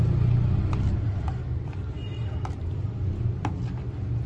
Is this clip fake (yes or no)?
no